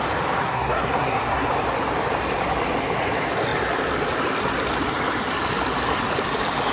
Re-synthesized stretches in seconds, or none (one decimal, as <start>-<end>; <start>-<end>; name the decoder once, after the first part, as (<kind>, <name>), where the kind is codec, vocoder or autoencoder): 0.4-1.5 (codec, SNAC)